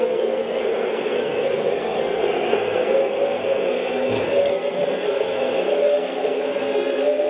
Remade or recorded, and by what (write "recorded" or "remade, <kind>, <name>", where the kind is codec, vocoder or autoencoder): remade, codec, SNAC